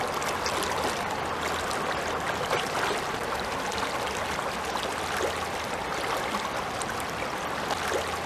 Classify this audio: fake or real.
real